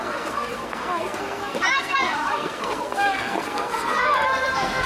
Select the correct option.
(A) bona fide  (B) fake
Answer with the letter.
B